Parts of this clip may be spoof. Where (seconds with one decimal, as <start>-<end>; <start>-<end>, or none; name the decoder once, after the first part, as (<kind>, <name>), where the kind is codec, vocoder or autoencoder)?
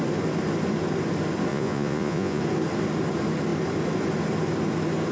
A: 1.5-2.4 (vocoder, Vocos)